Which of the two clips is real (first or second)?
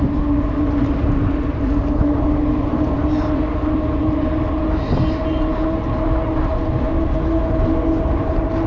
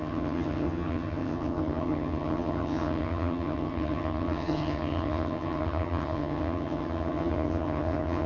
first